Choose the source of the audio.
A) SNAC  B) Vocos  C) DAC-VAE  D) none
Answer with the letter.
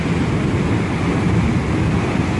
D